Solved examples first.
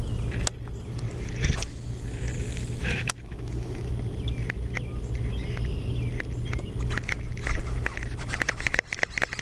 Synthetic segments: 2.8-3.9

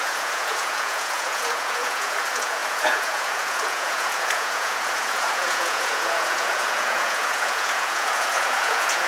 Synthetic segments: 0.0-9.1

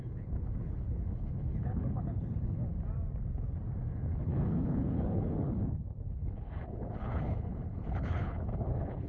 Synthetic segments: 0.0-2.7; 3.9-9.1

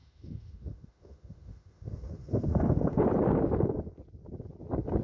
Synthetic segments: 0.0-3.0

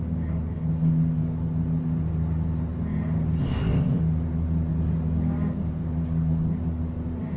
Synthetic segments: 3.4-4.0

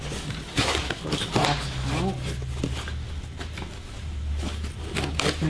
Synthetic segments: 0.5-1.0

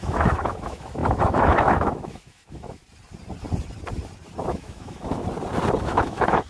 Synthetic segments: 0.0-2.8; 4.5-5.2; 5.8-6.5

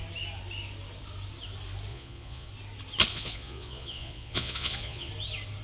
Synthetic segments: 1.9-2.5; 3.1-5.1